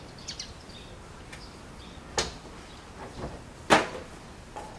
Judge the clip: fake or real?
real